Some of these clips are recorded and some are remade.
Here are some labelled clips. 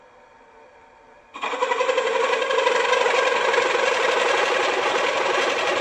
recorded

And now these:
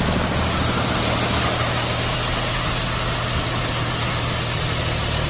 recorded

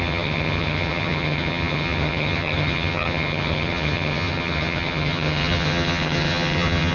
remade